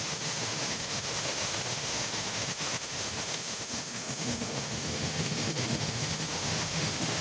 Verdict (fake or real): fake